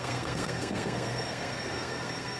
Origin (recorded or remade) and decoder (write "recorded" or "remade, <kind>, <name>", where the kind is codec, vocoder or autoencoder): remade, codec, SNAC